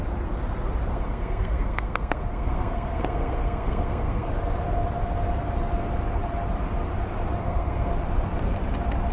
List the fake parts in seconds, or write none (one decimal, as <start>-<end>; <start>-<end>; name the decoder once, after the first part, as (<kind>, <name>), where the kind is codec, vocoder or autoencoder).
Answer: 0.9-4.3 (codec, SNAC); 7.4-7.9